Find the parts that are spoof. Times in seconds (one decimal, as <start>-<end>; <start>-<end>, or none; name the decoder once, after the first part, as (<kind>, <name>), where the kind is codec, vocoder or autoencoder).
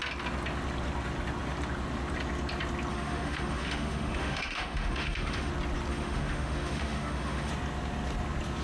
2.9-5.5 (autoencoder, DAC-VAE); 5.9-7.5